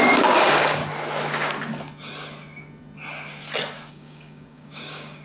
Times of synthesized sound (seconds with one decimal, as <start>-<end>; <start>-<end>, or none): 0.0-0.8; 3.9-5.2